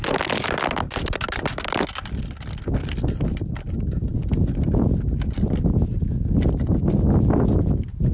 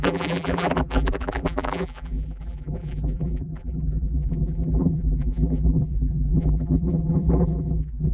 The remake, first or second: second